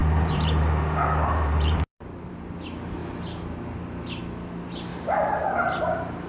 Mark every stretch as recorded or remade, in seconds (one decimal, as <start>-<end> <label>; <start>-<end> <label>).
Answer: 0.0-2.3 remade; 2.3-4.9 recorded; 4.9-5.5 remade; 5.5-6.3 recorded